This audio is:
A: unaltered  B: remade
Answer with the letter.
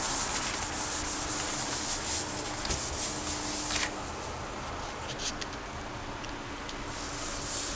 A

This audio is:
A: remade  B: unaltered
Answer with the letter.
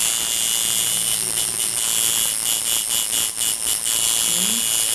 B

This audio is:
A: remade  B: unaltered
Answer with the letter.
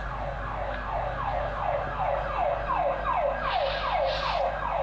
B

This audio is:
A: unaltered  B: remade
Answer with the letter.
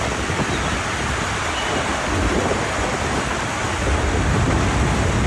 A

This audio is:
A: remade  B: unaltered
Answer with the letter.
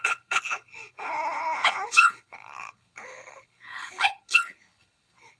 A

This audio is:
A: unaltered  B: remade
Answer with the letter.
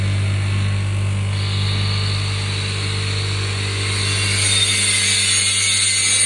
A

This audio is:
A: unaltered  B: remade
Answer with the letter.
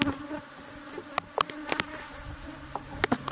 A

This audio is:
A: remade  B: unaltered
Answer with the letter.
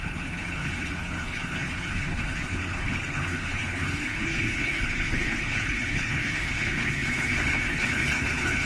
A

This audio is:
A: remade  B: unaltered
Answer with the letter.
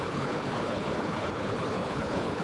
A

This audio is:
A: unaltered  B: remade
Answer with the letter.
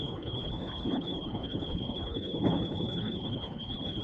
B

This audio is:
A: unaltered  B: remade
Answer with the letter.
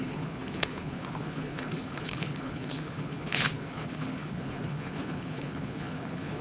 B